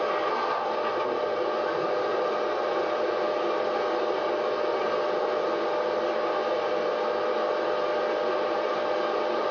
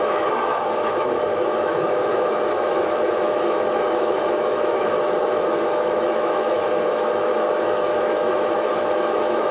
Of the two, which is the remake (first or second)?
second